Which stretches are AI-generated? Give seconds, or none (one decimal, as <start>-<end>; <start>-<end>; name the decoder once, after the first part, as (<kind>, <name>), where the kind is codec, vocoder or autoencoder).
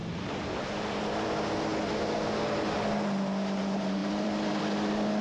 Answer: 1.0-1.7 (vocoder, BigVGAN v2); 3.6-5.2